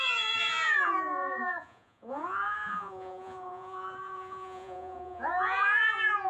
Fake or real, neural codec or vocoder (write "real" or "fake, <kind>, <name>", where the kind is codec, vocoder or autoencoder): fake, vocoder, Vocos